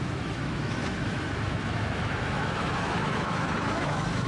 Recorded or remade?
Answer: remade